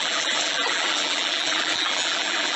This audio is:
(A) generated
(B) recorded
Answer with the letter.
A